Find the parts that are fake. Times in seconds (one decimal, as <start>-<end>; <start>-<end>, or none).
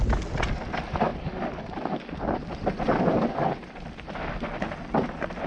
none